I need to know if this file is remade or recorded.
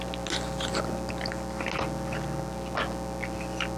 recorded